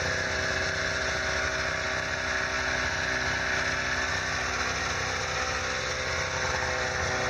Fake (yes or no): no